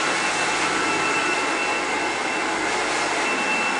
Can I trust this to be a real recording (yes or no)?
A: yes